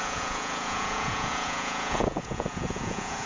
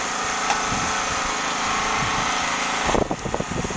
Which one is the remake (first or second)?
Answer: first